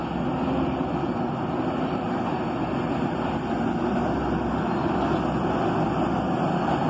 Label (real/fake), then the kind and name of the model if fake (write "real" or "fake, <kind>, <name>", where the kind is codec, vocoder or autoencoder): real